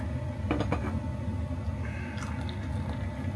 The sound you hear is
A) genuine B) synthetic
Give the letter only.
A